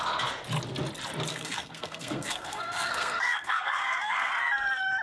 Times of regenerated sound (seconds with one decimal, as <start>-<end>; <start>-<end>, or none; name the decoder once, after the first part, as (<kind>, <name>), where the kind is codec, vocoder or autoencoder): 1.3-4.3 (codec, SNAC)